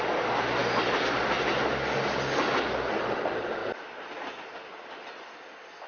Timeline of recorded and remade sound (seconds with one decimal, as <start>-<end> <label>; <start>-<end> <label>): 0.0-5.9 recorded